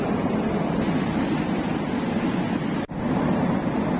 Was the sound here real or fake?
real